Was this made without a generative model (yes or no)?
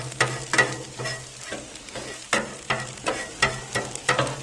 yes